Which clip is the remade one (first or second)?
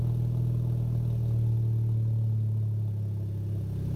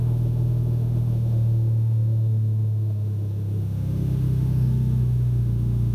second